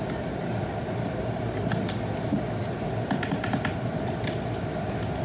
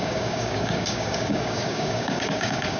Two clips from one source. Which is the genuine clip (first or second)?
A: first